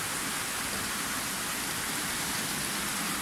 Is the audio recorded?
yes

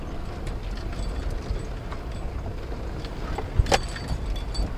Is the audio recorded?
yes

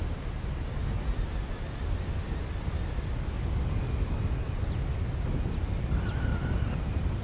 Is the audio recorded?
yes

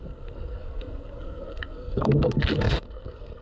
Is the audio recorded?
no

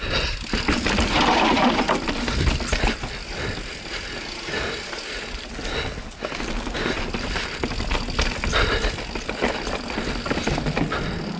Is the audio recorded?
yes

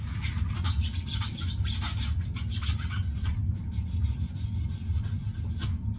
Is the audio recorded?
yes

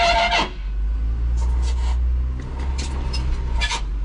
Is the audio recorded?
yes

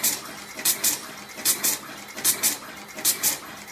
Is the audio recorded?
yes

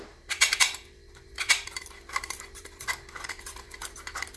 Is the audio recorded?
no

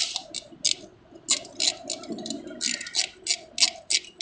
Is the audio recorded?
yes